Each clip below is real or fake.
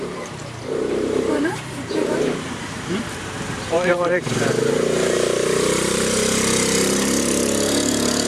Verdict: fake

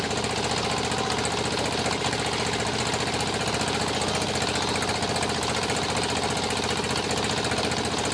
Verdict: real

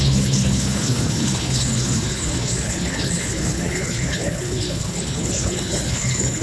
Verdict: fake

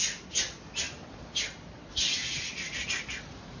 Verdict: real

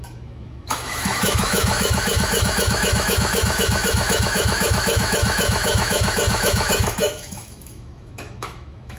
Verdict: fake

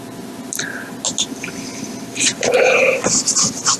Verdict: real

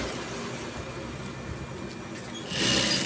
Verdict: real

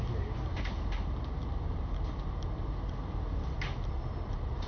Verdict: real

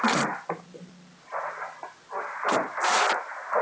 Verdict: real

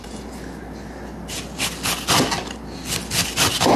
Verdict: real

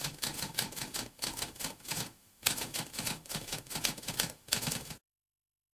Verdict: fake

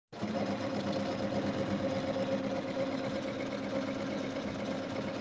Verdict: real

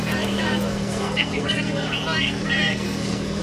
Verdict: fake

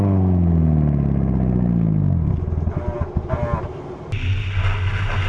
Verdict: real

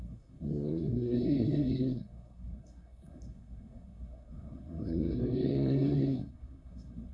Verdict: fake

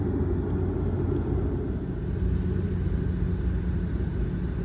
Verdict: real